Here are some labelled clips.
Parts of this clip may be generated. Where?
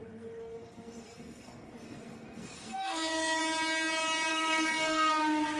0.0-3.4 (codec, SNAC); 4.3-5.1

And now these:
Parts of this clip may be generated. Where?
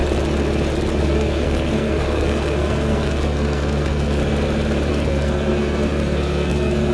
1.0-4.2 (codec, SNAC); 4.9-6.9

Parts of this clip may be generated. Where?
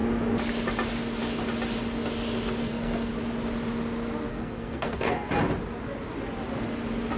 2.6-3.1 (codec, SNAC); 4.3-5.3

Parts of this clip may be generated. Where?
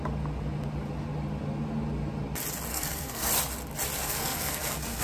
2.7-3.3 (codec, SNAC); 4.0-5.0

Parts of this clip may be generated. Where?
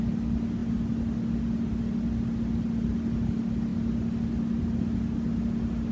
none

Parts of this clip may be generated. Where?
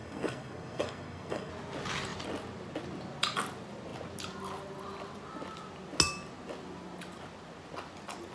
0.0-1.5 (codec, SNAC)